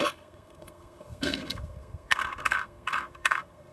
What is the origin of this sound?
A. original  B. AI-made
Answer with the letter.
B